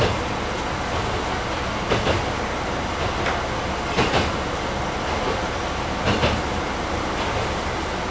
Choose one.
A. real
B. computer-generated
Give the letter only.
A